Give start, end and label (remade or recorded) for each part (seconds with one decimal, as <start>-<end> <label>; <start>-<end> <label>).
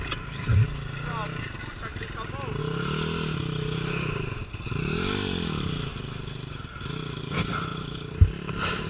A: 0.0-8.9 recorded